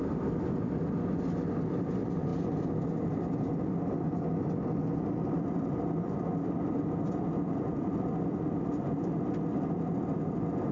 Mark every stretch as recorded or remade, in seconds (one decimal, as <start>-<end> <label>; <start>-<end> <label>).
0.0-10.7 recorded